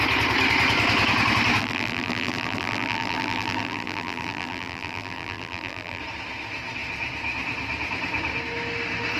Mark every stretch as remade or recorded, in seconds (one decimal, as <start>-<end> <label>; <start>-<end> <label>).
0.0-1.6 recorded; 1.6-6.0 remade; 6.0-9.2 recorded